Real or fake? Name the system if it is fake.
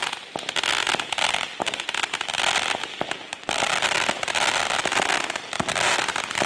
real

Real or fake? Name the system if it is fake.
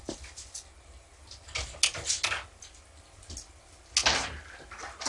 real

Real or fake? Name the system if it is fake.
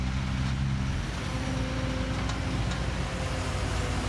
real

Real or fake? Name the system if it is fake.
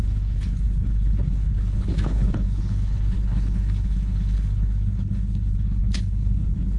fake, codec, HILCodec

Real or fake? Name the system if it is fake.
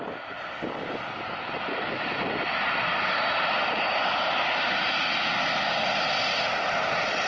real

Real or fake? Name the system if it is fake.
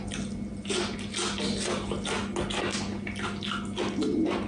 real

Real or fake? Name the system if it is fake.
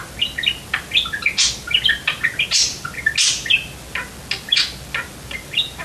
real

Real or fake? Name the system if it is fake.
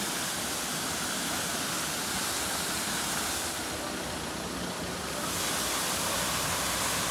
real